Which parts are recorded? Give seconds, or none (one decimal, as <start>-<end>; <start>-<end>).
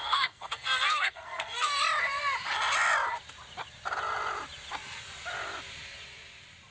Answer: 1.8-6.7